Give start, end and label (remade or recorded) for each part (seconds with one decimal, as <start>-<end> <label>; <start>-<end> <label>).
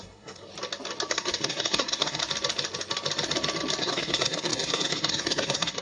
0.0-0.5 remade; 0.5-1.1 recorded; 1.1-2.2 remade; 2.2-3.8 recorded; 3.8-5.8 remade